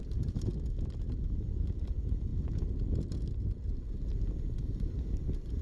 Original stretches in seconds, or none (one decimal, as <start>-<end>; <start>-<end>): 0.5-1.2; 2.3-4.4

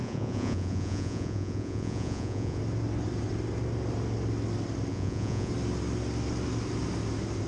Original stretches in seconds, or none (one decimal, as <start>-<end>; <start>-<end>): 2.6-4.9; 5.5-7.5